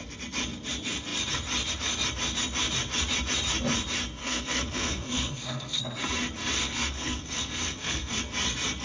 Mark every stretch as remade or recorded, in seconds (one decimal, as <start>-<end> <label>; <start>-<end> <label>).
0.0-4.2 recorded; 4.2-5.8 remade; 5.8-6.6 recorded; 6.6-8.2 remade; 8.2-8.8 recorded